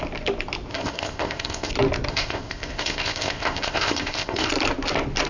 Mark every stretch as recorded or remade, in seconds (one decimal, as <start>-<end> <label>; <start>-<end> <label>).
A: 0.0-0.7 recorded; 0.7-1.7 remade; 1.7-2.1 recorded; 2.1-4.5 remade; 4.5-5.3 recorded